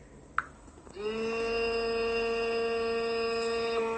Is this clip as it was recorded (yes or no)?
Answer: yes